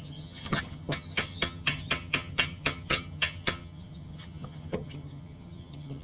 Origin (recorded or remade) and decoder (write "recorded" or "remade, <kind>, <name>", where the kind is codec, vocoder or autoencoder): remade, vocoder, HiFi-GAN